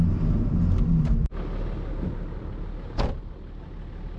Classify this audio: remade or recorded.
recorded